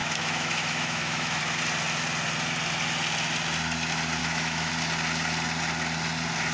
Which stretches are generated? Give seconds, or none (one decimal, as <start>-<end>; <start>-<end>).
0.0-1.4; 4.2-4.7